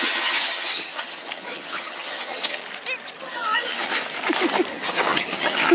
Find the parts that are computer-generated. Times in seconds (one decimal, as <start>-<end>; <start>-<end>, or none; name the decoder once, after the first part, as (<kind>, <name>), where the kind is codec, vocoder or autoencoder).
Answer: 0.0-2.6 (vocoder, HiFi-GAN); 3.2-4.0; 4.7-5.7